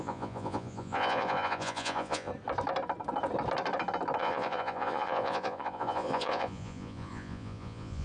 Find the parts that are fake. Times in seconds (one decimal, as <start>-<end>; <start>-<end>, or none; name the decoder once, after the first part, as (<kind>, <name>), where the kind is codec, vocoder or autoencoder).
0.0-2.3 (vocoder, Vocos); 4.2-8.0